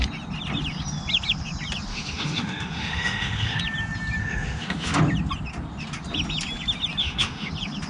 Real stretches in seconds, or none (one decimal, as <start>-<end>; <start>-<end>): 0.0-1.9; 3.6-4.2; 5.0-7.0; 7.5-7.9